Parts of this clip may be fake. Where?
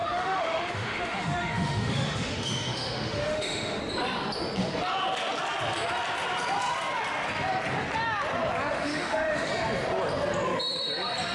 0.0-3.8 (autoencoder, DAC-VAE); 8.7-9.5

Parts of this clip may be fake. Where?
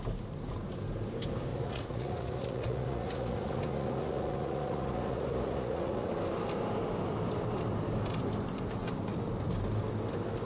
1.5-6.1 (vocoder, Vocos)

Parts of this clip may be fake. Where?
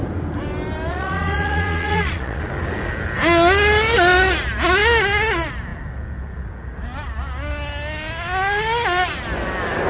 0.9-2.4 (vocoder, Vocos)